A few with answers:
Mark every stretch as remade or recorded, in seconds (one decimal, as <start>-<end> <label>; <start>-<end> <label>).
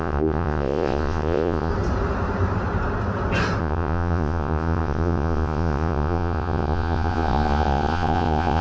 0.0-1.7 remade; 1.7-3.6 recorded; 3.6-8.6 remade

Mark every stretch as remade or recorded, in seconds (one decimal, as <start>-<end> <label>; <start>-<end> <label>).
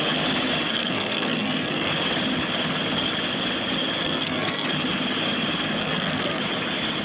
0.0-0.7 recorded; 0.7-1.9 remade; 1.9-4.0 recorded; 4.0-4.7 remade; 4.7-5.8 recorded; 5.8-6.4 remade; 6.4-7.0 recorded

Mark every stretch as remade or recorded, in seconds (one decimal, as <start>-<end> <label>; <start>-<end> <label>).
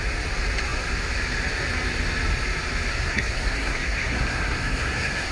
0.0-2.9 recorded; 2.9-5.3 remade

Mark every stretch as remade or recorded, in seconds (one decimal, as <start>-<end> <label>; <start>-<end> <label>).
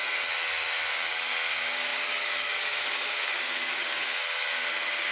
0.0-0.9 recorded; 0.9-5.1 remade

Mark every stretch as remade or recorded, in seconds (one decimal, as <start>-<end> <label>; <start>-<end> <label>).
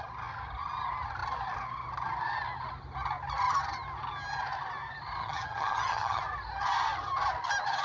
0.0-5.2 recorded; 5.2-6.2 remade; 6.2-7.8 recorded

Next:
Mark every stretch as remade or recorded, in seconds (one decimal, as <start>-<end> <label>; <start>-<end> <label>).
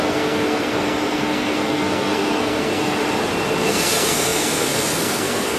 0.0-3.0 remade; 3.0-3.6 recorded; 3.6-5.6 remade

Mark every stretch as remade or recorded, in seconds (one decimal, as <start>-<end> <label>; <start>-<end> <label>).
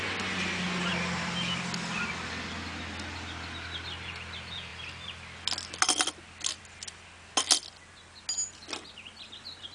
0.0-9.7 recorded